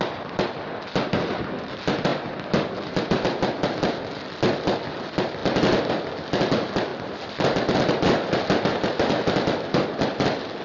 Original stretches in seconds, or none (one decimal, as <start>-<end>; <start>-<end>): 0.0-10.6

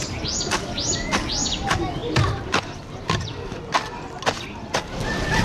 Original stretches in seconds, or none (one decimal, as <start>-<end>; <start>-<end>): 0.0-5.4

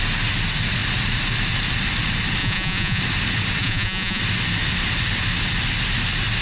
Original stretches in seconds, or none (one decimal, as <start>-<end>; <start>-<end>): 0.0-2.4; 3.0-3.6; 4.2-6.4

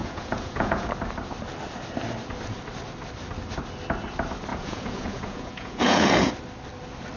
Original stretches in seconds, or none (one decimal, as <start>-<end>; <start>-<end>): 0.9-4.5; 6.3-7.2